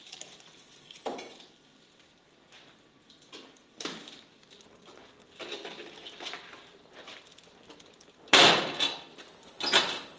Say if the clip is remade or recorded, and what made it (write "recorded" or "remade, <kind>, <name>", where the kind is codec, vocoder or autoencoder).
recorded